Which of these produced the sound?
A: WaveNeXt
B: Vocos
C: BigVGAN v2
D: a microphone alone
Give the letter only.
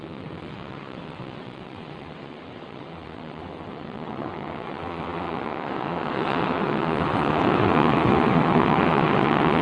A